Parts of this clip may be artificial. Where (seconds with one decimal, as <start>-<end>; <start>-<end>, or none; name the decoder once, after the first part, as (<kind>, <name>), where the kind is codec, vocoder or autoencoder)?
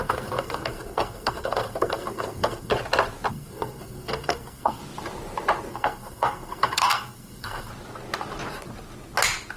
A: 0.0-2.7 (codec, SNAC); 3.3-4.8; 5.7-7.7